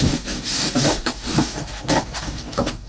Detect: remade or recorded remade